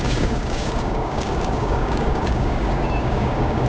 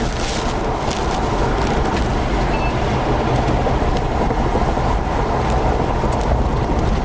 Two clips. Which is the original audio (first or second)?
second